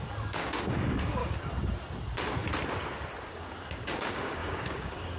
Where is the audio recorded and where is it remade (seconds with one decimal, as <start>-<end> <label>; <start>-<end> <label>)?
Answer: 0.0-1.2 remade; 1.2-3.3 recorded; 3.3-5.2 remade